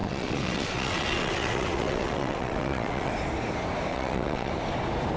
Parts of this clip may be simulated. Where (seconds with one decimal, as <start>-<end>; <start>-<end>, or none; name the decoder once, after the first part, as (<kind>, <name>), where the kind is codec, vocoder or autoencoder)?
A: 0.0-3.1 (vocoder, WaveNeXt); 3.9-4.5